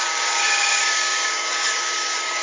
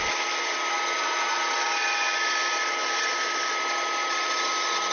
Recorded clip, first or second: second